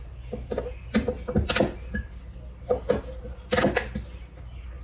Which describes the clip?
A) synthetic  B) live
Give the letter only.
B